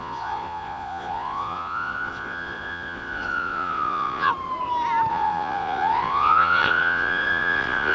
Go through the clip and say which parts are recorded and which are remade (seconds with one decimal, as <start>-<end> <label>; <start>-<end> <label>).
0.0-4.3 remade; 4.3-5.1 recorded; 5.1-7.9 remade